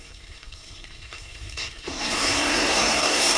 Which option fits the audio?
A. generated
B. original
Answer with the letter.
A